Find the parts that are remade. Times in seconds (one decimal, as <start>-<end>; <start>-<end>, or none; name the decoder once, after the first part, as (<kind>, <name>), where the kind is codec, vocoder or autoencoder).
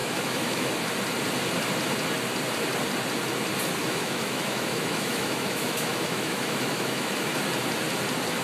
0.0-0.7 (autoencoder, DAC-VAE); 3.8-7.4